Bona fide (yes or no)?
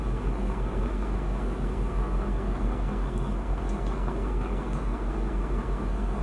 no